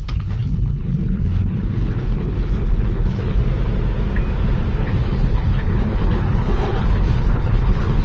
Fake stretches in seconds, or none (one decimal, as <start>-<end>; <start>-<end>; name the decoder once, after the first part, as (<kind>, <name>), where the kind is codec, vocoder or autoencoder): 0.0-3.4 (codec, HILCodec); 4.8-8.0